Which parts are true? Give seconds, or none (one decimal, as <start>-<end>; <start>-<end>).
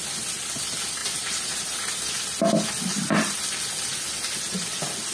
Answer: 0.0-1.0; 2.1-2.9; 3.4-5.1